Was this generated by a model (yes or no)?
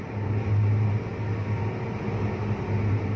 no